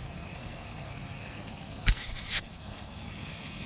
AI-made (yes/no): yes